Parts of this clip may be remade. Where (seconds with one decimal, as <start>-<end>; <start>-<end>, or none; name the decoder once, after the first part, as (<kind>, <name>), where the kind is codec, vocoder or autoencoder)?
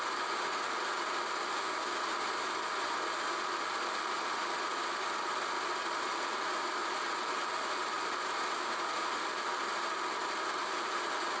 6.8-8.8 (vocoder, BigVGAN v2); 10.6-11.4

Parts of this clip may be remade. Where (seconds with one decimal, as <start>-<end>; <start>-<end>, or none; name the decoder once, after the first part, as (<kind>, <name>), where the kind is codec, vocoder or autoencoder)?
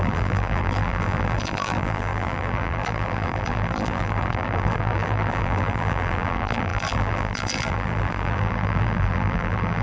0.0-9.8 (vocoder, BigVGAN v2)